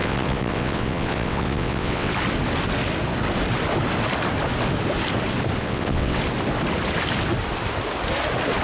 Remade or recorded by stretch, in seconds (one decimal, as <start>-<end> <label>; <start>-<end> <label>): 0.0-2.1 remade; 2.1-5.6 recorded; 5.6-6.2 remade; 6.2-8.6 recorded